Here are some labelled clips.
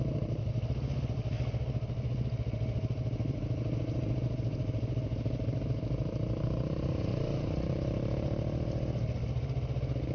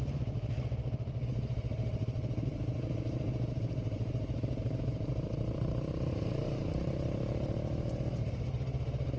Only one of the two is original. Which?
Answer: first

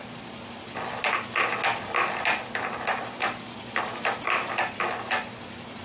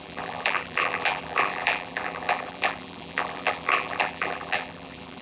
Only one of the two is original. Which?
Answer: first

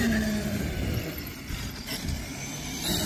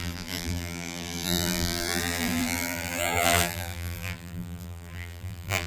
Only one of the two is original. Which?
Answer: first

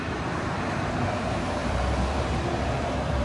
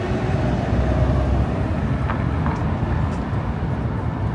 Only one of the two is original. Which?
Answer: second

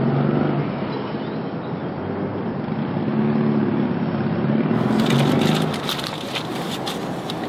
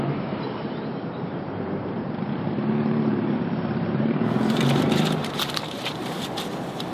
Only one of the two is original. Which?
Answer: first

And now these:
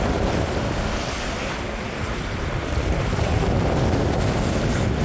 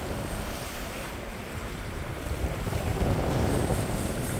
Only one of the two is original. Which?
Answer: first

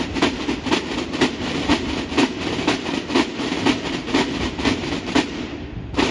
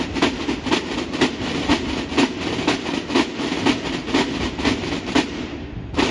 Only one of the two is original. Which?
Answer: second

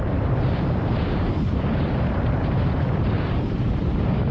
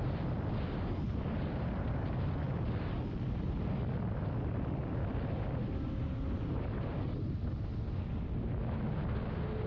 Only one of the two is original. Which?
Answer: second